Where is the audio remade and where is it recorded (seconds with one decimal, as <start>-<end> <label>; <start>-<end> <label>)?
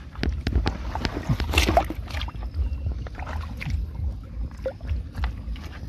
0.0-5.9 recorded